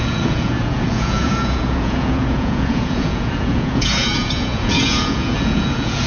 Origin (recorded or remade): remade